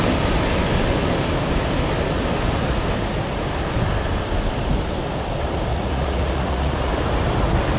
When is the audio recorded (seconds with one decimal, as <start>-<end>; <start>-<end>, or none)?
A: 0.0-5.7; 6.9-7.8